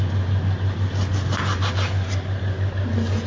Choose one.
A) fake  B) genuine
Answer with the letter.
B